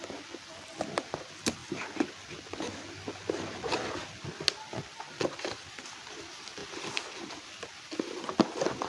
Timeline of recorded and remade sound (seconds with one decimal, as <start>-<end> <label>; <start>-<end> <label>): 0.0-8.9 recorded